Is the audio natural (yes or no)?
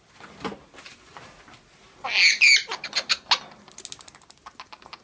yes